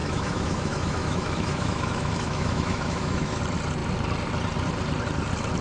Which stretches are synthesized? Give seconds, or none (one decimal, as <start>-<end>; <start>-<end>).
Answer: 0.0-3.4